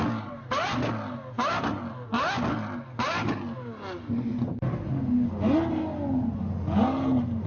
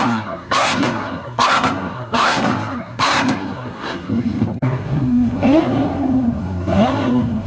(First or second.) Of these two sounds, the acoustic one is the first